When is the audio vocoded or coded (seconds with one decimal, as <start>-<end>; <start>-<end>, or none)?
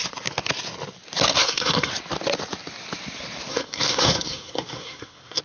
1.4-1.9; 3.5-5.4